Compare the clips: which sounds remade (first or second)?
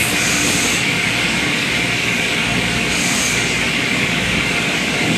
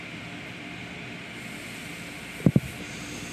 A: first